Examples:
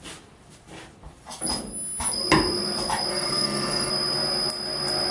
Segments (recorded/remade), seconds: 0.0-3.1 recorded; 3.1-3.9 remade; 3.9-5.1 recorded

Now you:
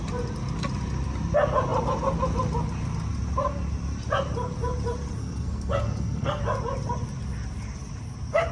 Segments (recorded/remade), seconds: 0.0-5.2 recorded; 5.2-6.4 remade; 6.4-8.5 recorded